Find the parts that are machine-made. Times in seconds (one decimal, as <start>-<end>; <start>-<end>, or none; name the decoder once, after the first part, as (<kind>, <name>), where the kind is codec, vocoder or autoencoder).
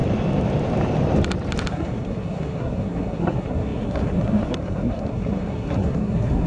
1.7-6.5 (codec, SNAC)